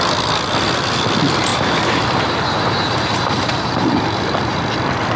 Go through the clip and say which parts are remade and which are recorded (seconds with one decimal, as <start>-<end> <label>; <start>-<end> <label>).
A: 0.0-1.5 recorded; 1.5-4.6 remade; 4.6-5.2 recorded